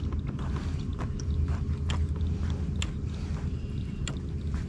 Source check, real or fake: real